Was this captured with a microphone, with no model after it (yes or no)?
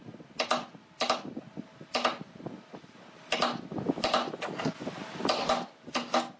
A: yes